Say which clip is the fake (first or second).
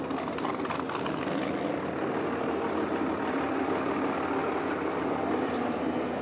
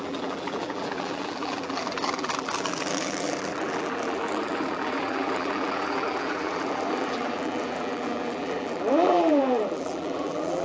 second